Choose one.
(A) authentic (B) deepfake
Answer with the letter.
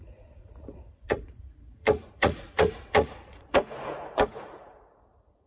B